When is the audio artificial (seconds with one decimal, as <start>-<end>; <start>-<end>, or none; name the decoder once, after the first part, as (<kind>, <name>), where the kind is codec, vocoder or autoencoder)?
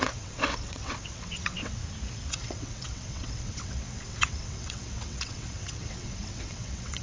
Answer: 0.0-1.8 (vocoder, WaveNeXt); 2.3-7.0